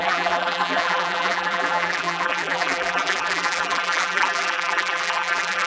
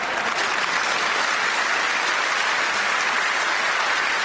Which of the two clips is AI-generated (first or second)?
first